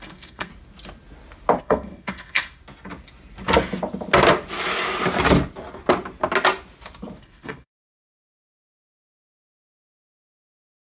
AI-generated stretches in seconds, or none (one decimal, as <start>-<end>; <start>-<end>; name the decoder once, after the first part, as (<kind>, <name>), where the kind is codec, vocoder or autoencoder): 0.0-0.5 (codec, SNAC); 1.6-2.6; 7.2-10.8